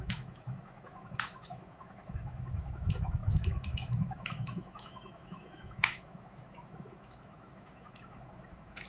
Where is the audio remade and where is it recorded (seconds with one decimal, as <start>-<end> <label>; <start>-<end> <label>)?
0.0-8.9 remade